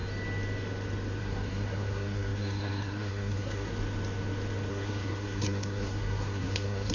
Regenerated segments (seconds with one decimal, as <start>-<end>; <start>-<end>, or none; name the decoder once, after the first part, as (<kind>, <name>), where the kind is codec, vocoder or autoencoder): 1.2-3.7 (codec, SNAC); 4.7-6.9